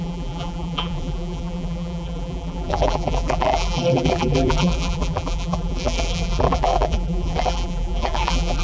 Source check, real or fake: fake